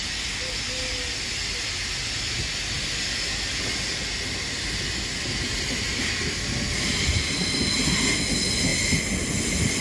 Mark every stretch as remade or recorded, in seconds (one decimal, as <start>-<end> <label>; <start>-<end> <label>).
0.0-9.8 recorded